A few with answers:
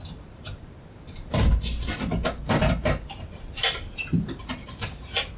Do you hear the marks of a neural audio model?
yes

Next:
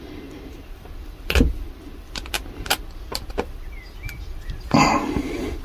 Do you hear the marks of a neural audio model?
no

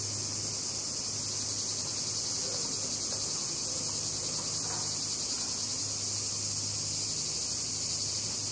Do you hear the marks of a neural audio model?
no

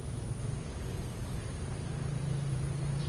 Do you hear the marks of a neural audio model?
yes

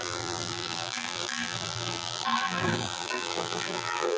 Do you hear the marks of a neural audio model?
yes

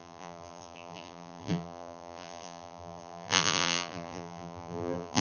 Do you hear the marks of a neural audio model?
yes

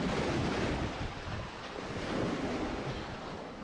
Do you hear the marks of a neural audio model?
yes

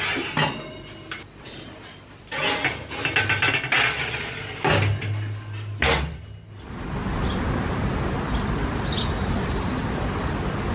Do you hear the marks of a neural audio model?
no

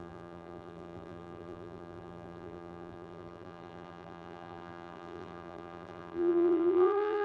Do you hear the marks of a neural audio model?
yes